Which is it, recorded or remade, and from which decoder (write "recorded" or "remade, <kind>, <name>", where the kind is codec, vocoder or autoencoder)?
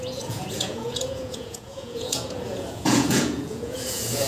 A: remade, vocoder, Vocos